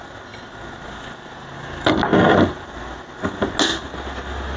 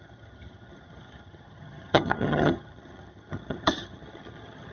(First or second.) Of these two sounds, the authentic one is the first